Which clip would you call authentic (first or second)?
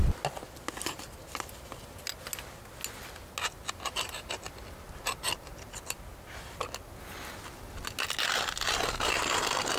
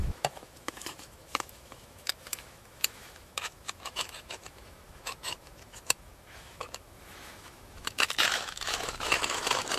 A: first